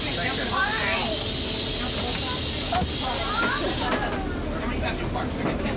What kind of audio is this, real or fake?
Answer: real